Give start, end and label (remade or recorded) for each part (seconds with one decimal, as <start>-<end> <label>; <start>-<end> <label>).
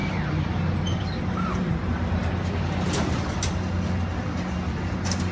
0.0-5.3 recorded